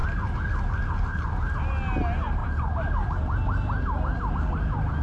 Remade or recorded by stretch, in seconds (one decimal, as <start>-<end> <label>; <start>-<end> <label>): 0.0-5.0 recorded